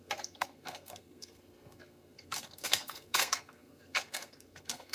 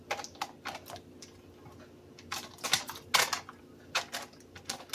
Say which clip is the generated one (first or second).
first